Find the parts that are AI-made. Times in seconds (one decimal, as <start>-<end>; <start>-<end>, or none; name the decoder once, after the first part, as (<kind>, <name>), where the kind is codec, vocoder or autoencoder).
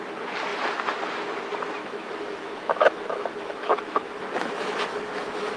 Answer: 1.8-5.6 (autoencoder, DAC-VAE)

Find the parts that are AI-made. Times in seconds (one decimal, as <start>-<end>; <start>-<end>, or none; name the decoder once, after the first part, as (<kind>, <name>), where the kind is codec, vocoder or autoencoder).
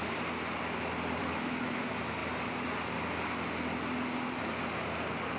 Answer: 1.2-1.8 (autoencoder, DAC-VAE)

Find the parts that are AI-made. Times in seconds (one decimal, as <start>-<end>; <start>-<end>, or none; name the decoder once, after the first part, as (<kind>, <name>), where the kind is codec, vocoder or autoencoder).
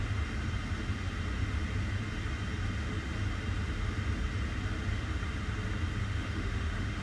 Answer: 6.0-7.0 (autoencoder, DAC-VAE)